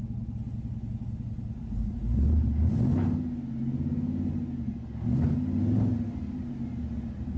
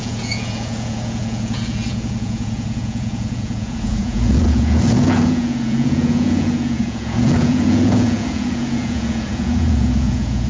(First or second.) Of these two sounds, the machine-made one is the second